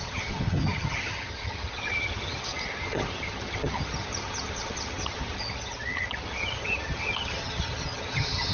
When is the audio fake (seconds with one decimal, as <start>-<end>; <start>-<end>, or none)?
0.0-8.5